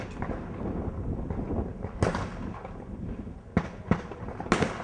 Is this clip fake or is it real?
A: real